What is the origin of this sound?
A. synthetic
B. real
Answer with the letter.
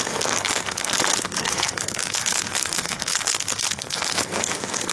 A